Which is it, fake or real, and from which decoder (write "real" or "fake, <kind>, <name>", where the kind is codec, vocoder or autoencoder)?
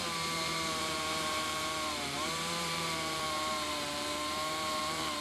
fake, vocoder, BigVGAN v2